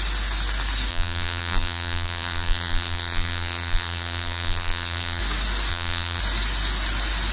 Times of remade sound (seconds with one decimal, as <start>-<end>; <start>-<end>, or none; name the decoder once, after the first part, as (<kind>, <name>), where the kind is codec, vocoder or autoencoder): 0.9-5.2 (vocoder, BigVGAN v2); 5.7-6.2